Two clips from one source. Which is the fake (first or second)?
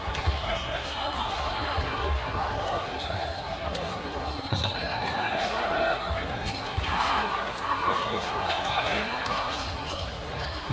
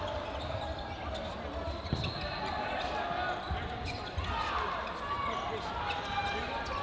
first